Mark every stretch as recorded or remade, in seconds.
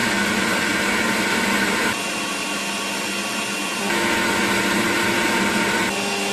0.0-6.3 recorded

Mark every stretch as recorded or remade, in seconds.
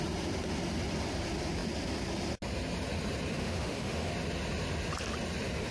0.0-3.3 recorded; 3.3-4.1 remade; 4.1-5.7 recorded